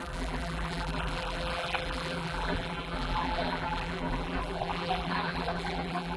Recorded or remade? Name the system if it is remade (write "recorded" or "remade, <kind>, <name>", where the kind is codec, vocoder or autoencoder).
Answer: remade, vocoder, BigVGAN v2